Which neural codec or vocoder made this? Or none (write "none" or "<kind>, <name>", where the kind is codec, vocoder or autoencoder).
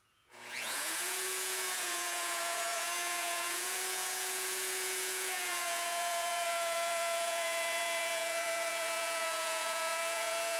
vocoder, Vocos